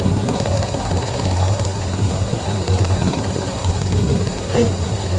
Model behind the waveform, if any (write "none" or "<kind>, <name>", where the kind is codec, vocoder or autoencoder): codec, SNAC